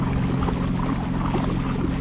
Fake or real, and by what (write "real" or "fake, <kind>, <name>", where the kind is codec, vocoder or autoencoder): real